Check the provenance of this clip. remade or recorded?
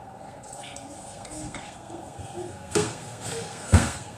remade